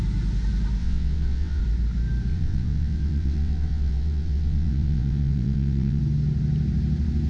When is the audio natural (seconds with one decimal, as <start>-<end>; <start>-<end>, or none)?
0.0-0.8; 1.6-2.3; 6.0-7.3